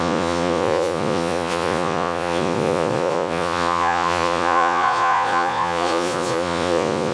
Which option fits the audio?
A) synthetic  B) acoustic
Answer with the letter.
A